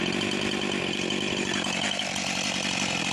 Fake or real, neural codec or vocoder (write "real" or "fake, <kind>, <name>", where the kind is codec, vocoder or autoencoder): real